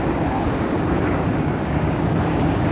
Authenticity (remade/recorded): remade